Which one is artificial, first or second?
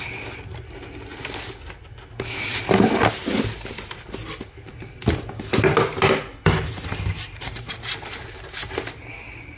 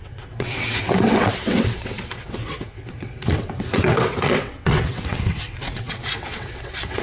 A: second